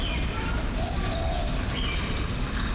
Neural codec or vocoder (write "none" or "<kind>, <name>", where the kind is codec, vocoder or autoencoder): none